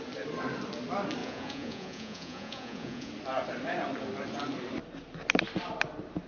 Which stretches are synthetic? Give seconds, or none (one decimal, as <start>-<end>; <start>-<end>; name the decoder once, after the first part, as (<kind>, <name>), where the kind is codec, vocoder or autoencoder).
1.2-3.1 (vocoder, Vocos)